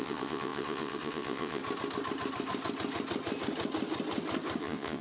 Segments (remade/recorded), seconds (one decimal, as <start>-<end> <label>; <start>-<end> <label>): 0.0-1.6 remade; 1.6-4.6 recorded; 4.6-5.0 remade